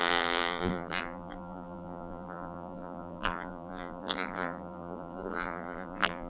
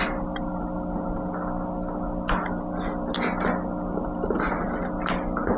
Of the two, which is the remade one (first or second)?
first